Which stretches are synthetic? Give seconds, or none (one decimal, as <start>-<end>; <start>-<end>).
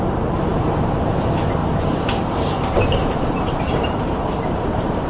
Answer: 0.5-1.2; 1.6-5.1